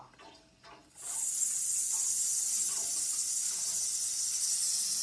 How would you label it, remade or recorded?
recorded